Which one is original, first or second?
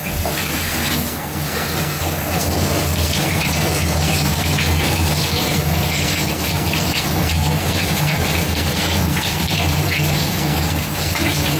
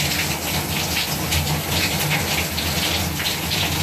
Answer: second